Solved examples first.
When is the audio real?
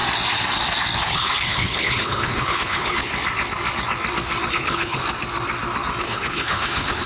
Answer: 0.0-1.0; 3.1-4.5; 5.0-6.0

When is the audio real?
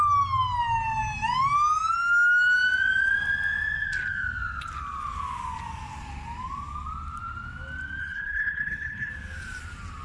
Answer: 0.0-8.0; 9.1-10.0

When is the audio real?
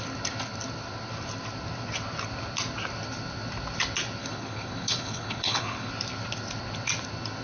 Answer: 0.0-4.2; 5.9-7.4